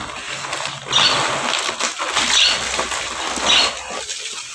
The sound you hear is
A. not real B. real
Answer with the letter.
B